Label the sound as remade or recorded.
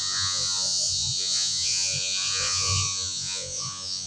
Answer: remade